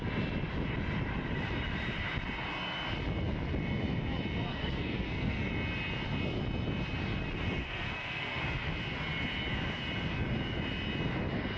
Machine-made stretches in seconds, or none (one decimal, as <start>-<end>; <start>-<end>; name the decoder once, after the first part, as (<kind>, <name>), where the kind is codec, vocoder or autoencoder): 4.5-5.5 (codec, SNAC); 7.6-8.4